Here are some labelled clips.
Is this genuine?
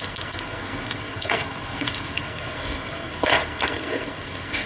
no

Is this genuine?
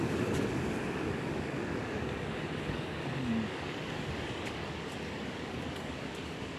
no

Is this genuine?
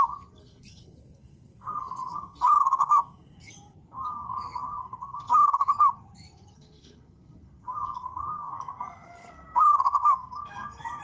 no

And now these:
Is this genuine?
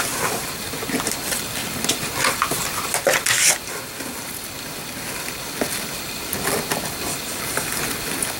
yes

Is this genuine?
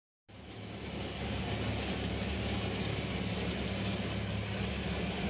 yes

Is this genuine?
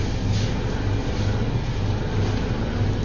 yes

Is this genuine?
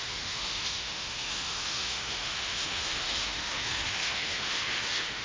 no